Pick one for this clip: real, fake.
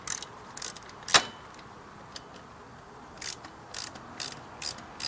real